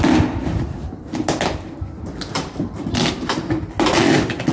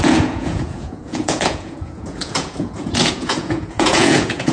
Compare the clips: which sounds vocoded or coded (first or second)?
second